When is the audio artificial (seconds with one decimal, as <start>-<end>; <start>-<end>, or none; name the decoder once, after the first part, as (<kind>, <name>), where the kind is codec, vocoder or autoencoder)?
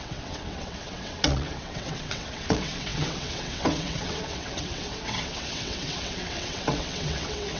0.0-7.6 (vocoder, WaveNeXt)